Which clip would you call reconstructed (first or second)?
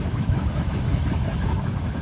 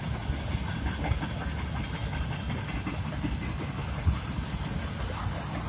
first